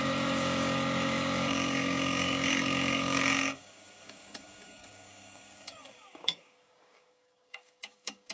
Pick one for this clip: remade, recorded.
remade